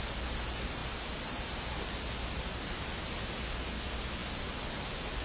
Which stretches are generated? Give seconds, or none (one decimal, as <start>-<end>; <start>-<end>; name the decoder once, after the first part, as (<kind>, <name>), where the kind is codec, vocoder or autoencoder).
none